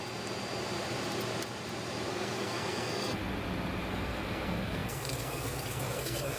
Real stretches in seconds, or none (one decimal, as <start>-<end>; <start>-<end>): 0.0-2.1; 3.2-3.9

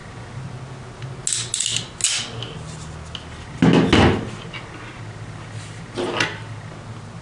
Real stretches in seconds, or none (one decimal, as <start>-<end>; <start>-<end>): 0.0-7.2

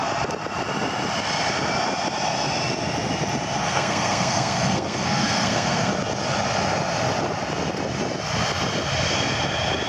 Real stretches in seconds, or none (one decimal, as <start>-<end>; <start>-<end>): 0.0-3.6; 5.9-9.9

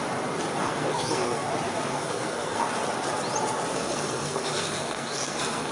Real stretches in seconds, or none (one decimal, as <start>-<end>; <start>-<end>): 0.0-0.6; 1.5-1.9; 2.7-3.7

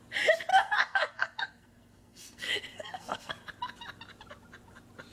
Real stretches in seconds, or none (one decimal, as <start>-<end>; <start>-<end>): 0.0-0.5; 3.3-5.1

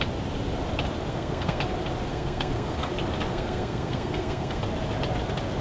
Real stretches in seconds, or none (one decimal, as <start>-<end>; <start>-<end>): 0.0-1.1; 1.6-2.1; 2.9-3.3; 4.6-5.6

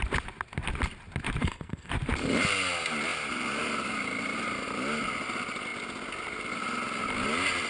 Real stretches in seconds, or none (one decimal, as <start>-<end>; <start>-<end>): 0.0-1.4; 1.9-7.7

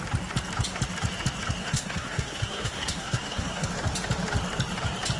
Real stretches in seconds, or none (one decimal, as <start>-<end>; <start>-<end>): 0.0-1.6; 3.7-5.2